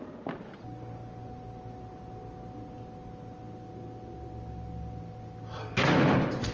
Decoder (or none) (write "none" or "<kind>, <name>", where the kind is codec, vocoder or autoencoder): none